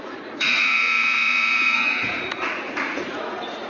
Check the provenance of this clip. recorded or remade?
remade